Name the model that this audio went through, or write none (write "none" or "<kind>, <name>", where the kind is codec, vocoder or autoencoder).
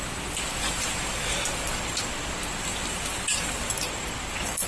none